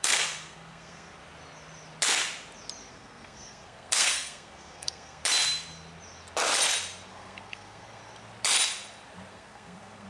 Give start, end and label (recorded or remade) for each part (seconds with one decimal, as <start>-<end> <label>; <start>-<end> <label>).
0.0-1.2 remade; 1.2-2.9 recorded; 2.9-5.2 remade; 5.2-7.1 recorded; 7.1-8.0 remade; 8.0-9.3 recorded; 9.3-10.1 remade